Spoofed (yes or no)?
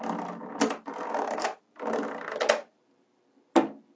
no